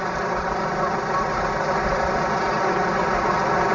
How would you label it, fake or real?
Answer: real